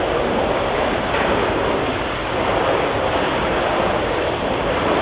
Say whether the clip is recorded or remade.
recorded